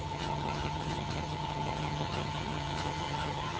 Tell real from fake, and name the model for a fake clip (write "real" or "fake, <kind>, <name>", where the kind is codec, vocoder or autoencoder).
fake, vocoder, HiFi-GAN